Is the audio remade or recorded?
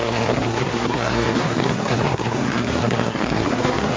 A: remade